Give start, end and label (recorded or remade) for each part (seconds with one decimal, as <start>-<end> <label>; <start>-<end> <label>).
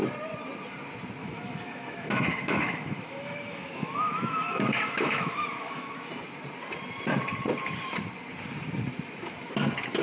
0.0-1.2 recorded; 1.2-5.9 remade; 5.9-10.0 recorded